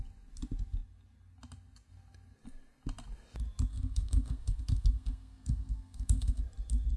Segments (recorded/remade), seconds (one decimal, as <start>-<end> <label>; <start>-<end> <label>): 0.0-3.7 recorded; 3.7-6.4 remade; 6.4-7.0 recorded